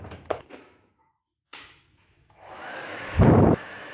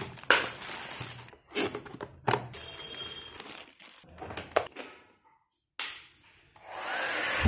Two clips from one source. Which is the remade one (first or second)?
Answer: first